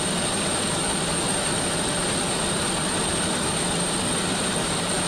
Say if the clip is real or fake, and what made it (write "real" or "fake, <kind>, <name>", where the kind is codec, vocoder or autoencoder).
real